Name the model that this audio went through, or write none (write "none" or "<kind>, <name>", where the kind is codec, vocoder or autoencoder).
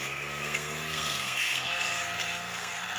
codec, SNAC